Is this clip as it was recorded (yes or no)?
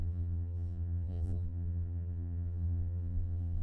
no